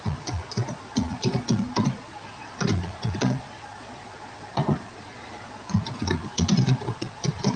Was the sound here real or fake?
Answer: fake